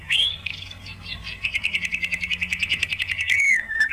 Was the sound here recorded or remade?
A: remade